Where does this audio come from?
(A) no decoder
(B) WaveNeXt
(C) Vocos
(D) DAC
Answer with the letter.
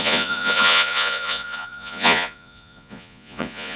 C